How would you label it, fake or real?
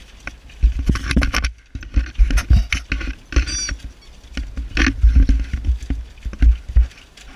real